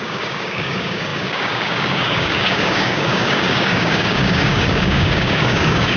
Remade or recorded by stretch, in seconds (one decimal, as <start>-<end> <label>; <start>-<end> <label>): 0.0-6.0 remade